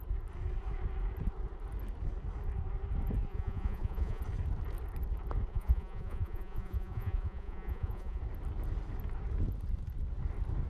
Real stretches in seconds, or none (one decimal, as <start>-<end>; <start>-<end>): 0.0-3.3; 4.2-5.5; 8.2-10.7